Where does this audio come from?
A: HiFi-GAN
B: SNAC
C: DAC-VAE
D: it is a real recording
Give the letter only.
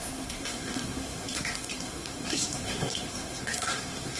B